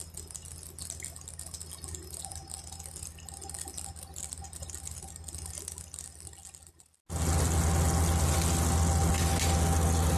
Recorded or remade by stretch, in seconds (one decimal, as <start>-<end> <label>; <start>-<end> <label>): 0.0-10.2 recorded